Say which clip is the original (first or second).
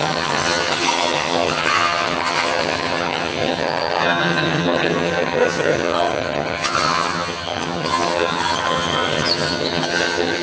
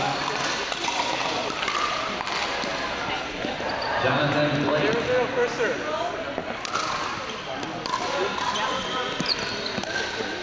second